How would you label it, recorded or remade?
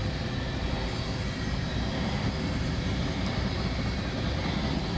recorded